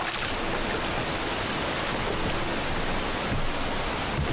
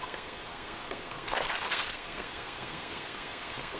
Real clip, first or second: first